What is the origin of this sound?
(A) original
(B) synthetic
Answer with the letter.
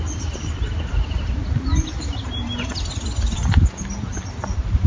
A